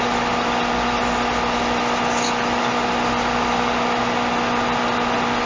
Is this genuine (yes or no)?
yes